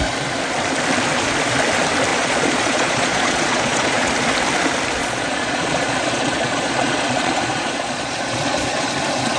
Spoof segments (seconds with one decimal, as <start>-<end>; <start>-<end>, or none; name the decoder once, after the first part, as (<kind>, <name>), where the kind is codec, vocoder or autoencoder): 2.1-4.1 (vocoder, Vocos); 5.0-8.9